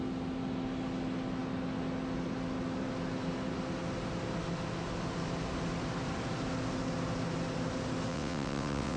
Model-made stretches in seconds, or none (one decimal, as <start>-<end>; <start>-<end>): 8.1-9.0